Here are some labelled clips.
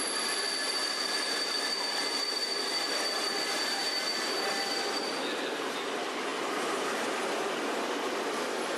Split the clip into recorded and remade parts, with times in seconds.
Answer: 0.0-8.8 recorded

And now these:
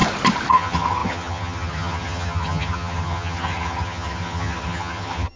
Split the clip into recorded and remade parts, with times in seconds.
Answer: 0.0-0.5 recorded; 0.5-5.4 remade

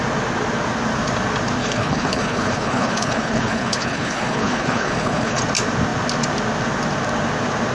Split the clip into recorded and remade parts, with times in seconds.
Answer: 0.0-1.6 recorded; 1.6-5.4 remade; 5.4-7.7 recorded